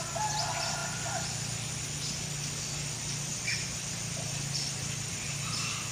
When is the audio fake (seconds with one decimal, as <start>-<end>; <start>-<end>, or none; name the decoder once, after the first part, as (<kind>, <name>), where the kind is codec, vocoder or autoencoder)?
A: 0.8-1.8 (vocoder, BigVGAN v2); 3.5-5.5